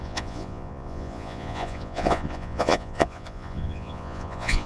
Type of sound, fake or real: fake